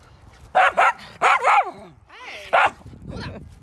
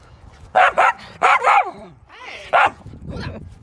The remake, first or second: second